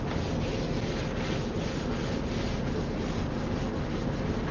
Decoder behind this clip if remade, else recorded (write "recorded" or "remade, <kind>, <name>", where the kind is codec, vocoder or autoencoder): recorded